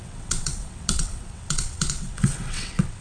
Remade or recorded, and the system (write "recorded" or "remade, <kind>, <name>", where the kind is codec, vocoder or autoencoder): remade, vocoder, WaveNeXt